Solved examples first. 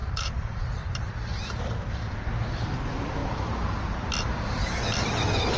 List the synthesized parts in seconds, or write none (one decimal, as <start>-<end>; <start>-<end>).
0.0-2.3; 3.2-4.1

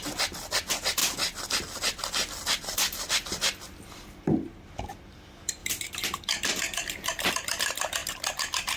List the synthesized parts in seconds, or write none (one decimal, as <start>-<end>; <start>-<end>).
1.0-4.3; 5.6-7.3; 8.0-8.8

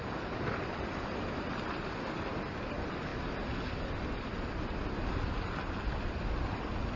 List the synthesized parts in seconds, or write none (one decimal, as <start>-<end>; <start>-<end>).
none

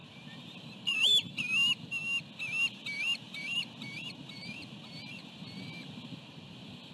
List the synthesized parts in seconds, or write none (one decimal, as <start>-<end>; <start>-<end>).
0.0-1.3; 2.6-6.9

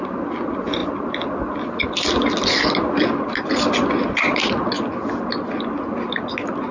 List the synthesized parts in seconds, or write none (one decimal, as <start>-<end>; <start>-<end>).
none